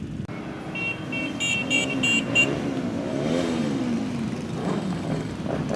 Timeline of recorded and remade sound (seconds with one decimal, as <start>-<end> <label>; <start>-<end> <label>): 0.0-3.1 recorded; 3.1-3.8 remade; 3.8-4.6 recorded; 4.6-5.3 remade; 5.3-5.8 recorded